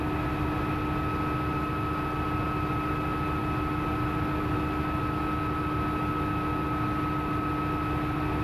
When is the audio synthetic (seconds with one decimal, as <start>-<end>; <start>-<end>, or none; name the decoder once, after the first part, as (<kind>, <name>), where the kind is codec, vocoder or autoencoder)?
none